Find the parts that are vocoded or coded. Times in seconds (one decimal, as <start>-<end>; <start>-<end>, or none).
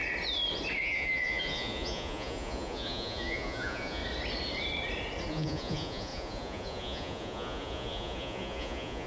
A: 0.8-4.0; 5.3-9.1